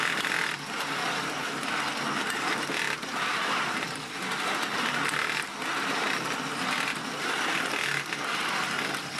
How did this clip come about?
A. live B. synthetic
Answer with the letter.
A